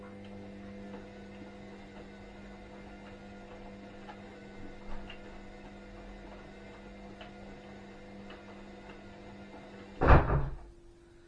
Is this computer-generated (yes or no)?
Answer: no